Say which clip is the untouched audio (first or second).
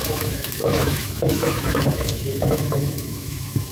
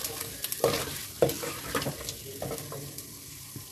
second